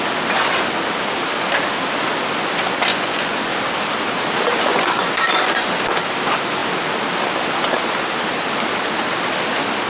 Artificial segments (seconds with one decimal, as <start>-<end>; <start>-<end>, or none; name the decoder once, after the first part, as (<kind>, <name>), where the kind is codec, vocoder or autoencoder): 2.9-3.5 (vocoder, Vocos); 4.7-5.7